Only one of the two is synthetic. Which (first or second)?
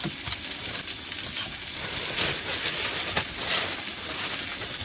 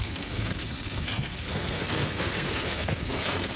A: second